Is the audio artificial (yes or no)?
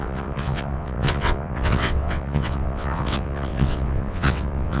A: yes